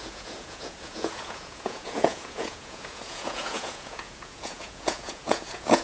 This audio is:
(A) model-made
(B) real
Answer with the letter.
A